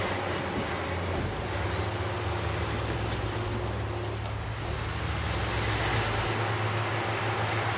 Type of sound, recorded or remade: recorded